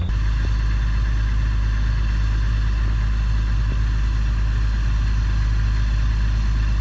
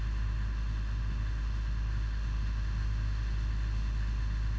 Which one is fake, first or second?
second